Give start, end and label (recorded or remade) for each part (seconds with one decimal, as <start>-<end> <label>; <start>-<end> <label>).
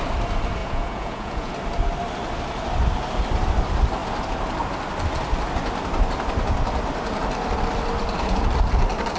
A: 0.0-0.6 recorded; 0.6-1.5 remade; 1.5-9.2 recorded